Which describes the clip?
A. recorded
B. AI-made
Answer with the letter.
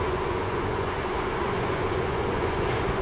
B